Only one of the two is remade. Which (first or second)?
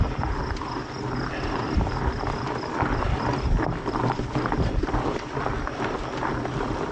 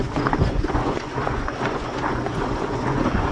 second